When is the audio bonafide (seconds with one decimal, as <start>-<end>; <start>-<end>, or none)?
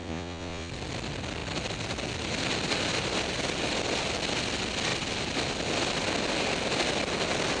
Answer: 0.7-7.6